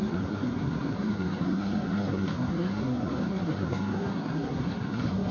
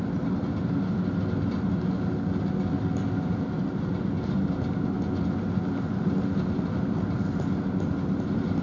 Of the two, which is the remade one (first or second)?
first